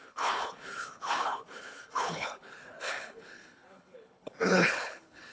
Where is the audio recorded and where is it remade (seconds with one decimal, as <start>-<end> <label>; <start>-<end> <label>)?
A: 0.0-5.3 remade